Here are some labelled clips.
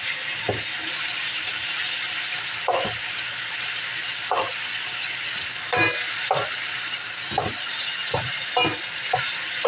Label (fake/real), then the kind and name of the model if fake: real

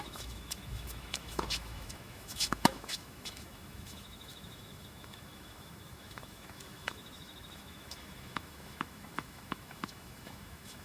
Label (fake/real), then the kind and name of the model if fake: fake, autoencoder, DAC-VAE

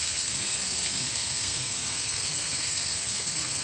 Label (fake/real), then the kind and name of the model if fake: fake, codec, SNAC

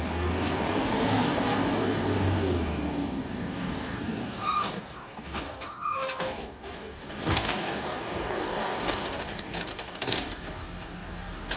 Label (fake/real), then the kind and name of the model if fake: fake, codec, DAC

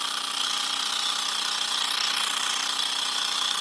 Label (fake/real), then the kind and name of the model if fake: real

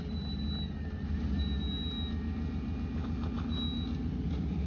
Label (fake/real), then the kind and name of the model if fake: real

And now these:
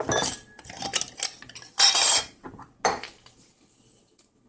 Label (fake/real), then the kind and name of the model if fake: real